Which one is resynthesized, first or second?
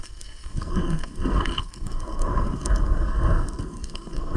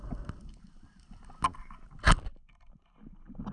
first